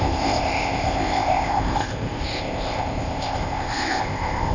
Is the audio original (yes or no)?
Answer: no